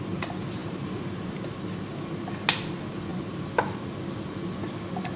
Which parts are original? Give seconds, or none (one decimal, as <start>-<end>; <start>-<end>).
0.0-0.6; 2.0-3.1; 3.6-5.2